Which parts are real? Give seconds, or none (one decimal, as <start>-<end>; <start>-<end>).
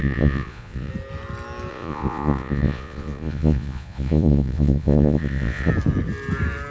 0.9-1.7; 5.7-6.7